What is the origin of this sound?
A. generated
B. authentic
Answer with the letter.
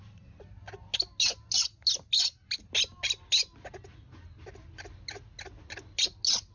B